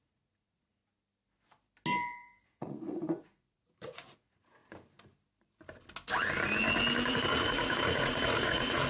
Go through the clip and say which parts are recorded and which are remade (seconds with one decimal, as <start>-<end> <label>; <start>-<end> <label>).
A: 0.0-0.8 remade; 0.8-2.4 recorded; 2.4-4.6 remade; 4.6-7.1 recorded; 7.1-8.9 remade